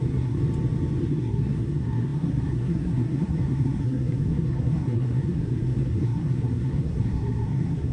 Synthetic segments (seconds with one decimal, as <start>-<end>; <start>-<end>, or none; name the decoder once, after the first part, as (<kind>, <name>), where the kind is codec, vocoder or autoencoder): 0.0-0.4 (codec, SNAC); 1.0-7.9